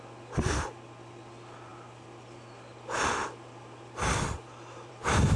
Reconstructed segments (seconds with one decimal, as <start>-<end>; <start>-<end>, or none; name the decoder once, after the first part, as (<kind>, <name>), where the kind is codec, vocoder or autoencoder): none